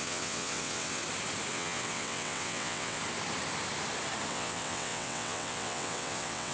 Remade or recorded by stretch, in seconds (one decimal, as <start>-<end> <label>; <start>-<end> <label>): 0.0-1.0 remade; 1.0-1.5 recorded; 1.5-3.0 remade; 3.0-4.3 recorded; 4.3-6.5 remade